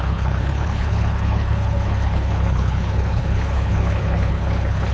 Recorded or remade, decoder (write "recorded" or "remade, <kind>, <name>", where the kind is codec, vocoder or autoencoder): remade, codec, HILCodec